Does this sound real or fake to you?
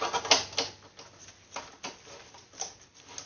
real